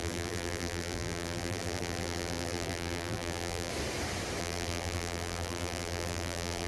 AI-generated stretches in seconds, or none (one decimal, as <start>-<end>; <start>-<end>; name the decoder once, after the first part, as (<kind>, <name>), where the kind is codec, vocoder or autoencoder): 0.0-3.7 (vocoder, BigVGAN v2); 4.4-6.7